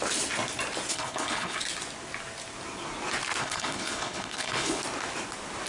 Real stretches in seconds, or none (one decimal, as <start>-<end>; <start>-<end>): 0.0-0.9; 1.6-3.4; 4.8-5.7